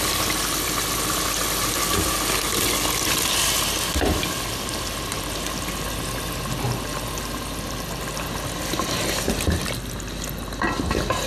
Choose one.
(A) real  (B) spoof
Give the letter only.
A